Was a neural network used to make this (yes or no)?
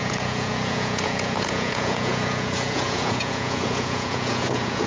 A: yes